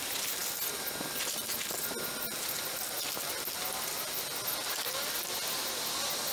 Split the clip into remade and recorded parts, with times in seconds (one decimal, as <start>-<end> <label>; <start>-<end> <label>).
0.0-6.3 recorded